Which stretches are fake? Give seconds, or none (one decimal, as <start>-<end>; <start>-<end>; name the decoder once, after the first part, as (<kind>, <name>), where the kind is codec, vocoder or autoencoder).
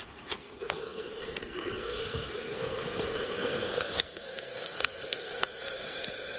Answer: 0.0-6.4 (codec, SNAC)